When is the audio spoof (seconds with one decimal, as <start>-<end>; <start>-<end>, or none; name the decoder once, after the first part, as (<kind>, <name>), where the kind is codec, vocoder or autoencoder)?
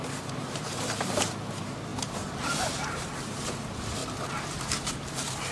0.0-4.0 (vocoder, BigVGAN v2); 4.5-5.5